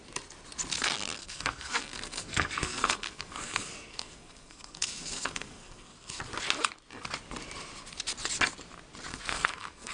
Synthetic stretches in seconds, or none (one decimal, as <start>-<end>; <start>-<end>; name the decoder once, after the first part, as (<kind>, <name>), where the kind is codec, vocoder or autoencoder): 1.2-6.2 (codec, SNAC); 9.1-9.9